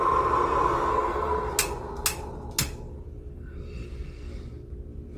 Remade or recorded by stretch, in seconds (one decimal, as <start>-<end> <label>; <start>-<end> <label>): 0.0-0.9 recorded; 0.9-1.5 remade; 1.5-3.3 recorded; 3.3-4.3 remade; 4.3-5.2 recorded